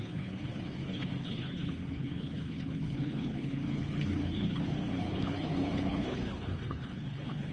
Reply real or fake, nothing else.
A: fake